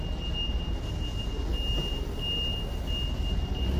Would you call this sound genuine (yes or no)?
yes